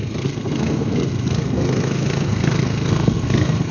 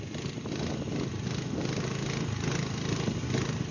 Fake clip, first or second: first